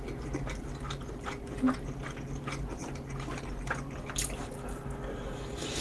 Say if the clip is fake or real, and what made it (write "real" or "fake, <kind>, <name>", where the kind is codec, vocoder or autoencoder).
real